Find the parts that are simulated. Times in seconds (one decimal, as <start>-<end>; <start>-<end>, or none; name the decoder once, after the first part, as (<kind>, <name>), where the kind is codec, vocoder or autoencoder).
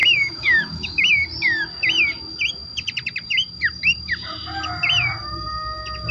0.0-1.1 (autoencoder, DAC-VAE)